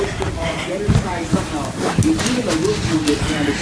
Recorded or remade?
recorded